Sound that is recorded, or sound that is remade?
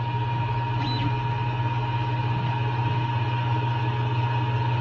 recorded